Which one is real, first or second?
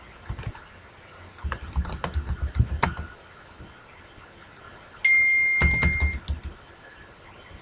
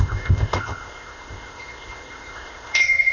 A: first